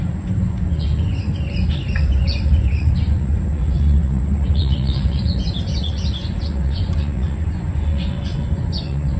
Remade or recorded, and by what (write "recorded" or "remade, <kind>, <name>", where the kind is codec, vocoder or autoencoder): remade, vocoder, Vocos